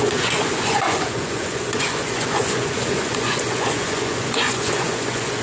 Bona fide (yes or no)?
no